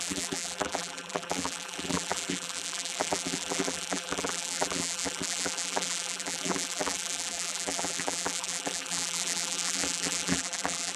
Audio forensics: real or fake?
fake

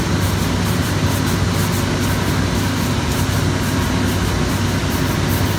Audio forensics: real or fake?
real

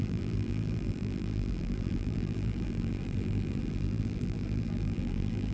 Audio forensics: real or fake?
fake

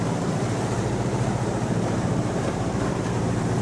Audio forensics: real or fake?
fake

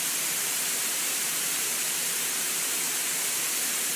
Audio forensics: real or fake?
fake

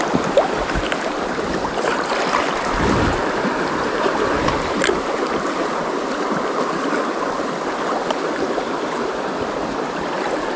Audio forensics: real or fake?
fake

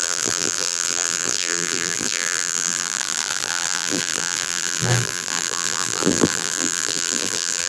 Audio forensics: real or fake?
fake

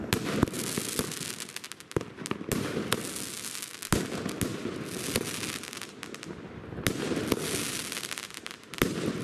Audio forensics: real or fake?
real